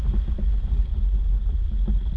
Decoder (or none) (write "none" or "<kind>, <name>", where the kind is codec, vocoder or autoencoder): none